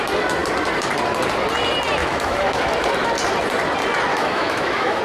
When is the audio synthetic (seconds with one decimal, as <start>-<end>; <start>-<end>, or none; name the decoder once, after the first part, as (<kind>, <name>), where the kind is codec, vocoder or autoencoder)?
2.0-2.6 (autoencoder, DAC-VAE); 4.1-5.0